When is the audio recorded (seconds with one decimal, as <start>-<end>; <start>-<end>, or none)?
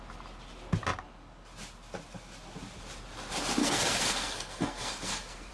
0.0-3.6